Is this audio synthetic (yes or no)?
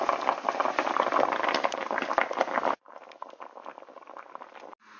no